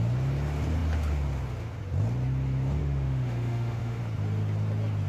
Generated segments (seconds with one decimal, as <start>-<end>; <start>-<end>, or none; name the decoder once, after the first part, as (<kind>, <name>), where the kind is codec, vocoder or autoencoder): 2.8-4.0 (autoencoder, DAC-VAE)